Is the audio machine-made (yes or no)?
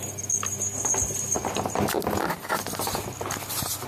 no